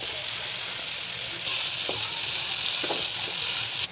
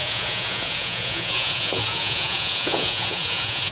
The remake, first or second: second